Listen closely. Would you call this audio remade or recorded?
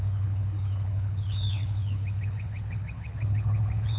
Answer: remade